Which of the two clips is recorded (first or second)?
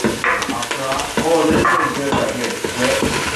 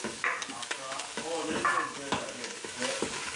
first